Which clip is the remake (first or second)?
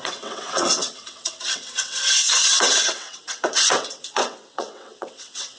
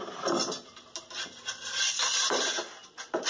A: first